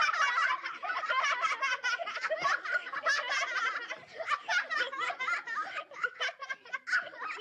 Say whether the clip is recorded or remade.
recorded